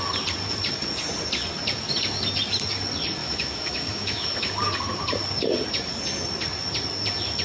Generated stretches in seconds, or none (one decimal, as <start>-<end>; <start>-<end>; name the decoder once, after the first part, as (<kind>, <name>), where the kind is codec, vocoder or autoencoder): 3.2-4.5 (autoencoder, DAC-VAE)